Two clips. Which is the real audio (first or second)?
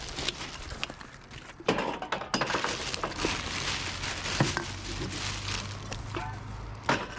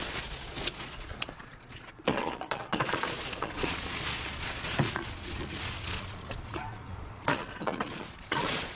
first